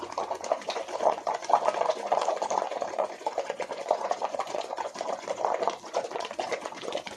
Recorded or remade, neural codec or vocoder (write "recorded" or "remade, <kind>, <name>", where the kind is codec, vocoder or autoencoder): remade, vocoder, Vocos